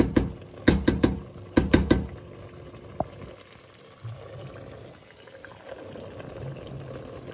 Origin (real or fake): real